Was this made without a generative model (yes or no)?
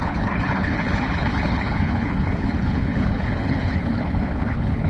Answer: no